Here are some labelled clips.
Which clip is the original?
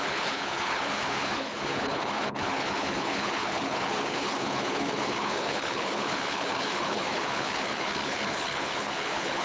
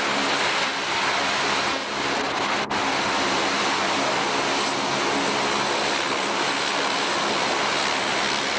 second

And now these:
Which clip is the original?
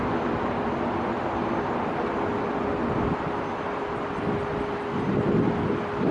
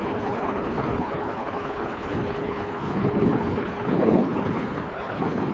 first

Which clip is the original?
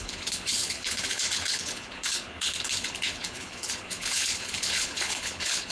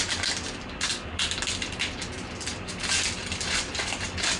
second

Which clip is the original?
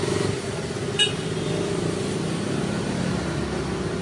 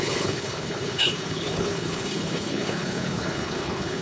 first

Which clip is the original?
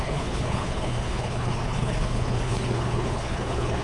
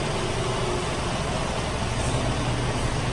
second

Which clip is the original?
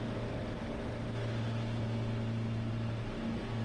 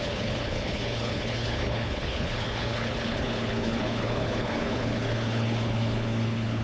first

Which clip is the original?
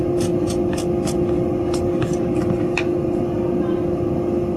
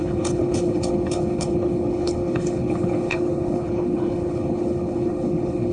first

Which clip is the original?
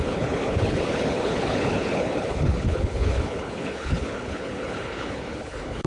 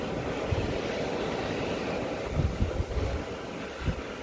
second